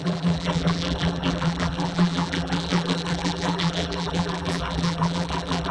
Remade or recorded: remade